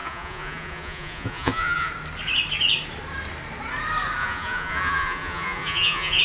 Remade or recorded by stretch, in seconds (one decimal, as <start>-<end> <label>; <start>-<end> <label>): 0.0-1.9 remade; 1.9-4.2 recorded; 4.2-6.2 remade